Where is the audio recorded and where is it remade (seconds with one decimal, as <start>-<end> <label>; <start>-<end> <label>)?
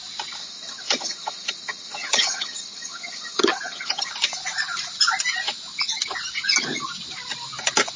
0.0-0.4 recorded; 0.4-4.1 remade; 4.1-8.0 recorded